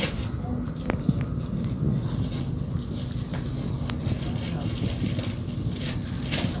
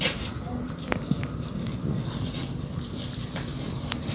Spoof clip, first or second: second